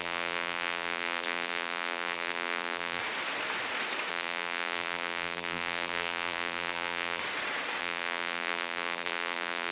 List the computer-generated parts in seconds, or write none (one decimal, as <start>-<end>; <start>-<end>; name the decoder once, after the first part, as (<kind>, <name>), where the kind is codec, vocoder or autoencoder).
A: 0.0-3.0 (vocoder, BigVGAN v2); 4.1-7.2; 7.8-9.7